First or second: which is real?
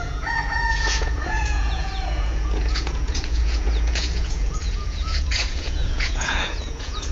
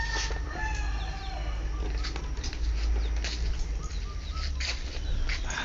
second